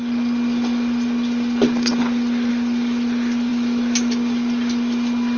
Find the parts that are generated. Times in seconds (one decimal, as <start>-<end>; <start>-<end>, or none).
none